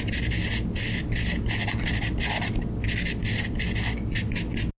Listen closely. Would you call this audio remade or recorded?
recorded